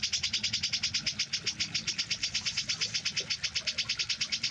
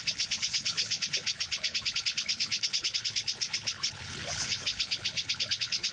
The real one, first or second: first